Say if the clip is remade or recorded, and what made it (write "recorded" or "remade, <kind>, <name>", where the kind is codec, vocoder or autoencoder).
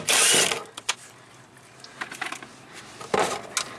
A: recorded